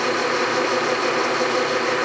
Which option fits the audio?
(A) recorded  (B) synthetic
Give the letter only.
A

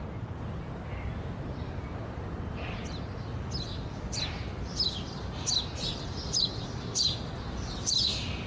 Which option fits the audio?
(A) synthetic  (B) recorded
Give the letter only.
B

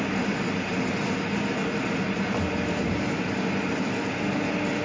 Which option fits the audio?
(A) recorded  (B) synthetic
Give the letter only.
A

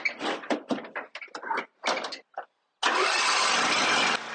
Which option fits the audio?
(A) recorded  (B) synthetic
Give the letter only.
A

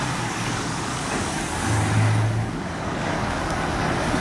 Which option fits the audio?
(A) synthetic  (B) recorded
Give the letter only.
A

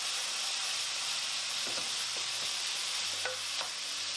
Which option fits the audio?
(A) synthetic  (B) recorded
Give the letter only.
B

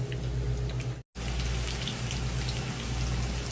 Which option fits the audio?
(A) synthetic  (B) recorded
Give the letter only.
B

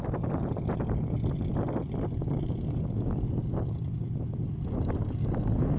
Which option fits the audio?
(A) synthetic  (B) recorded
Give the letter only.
B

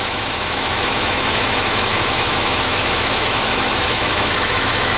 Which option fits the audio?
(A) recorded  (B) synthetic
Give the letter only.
B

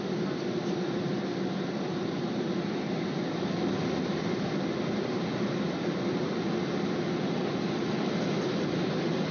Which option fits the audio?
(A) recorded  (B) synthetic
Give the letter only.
A